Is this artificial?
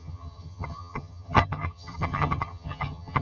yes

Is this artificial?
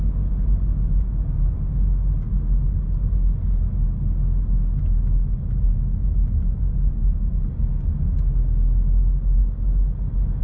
no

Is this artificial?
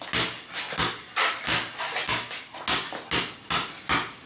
no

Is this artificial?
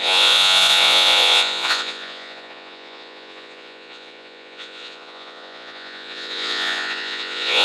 yes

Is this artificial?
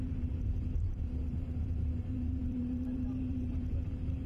yes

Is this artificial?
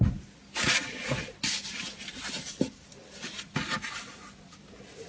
no